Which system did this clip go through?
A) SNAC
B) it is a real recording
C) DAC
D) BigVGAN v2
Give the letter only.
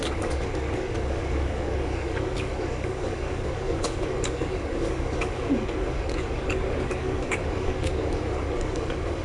C